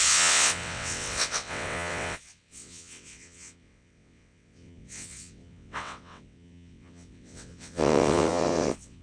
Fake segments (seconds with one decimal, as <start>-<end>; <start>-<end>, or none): 0.0-9.0